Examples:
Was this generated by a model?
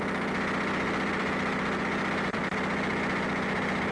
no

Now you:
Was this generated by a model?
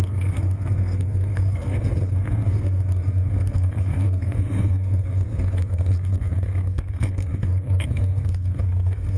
yes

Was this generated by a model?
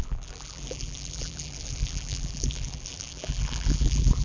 yes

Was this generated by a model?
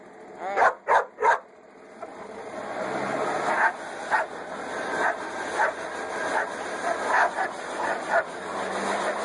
no